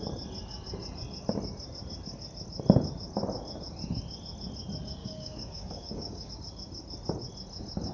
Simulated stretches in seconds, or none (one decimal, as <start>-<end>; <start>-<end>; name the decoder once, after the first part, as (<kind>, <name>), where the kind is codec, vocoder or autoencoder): 5.0-6.3 (codec, DAC)